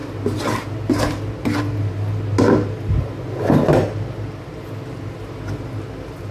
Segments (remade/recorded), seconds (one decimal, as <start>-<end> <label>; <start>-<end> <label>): 0.0-6.3 recorded